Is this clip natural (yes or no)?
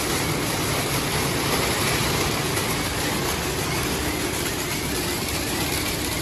yes